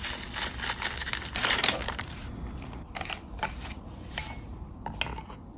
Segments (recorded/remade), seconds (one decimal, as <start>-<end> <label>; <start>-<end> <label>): 0.0-1.0 recorded; 1.0-2.2 remade; 2.2-3.4 recorded; 3.4-5.0 remade; 5.0-5.6 recorded